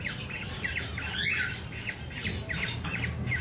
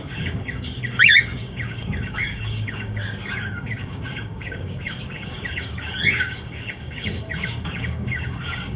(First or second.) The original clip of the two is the first